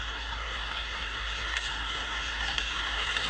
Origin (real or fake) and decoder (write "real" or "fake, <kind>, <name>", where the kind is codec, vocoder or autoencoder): fake, codec, SNAC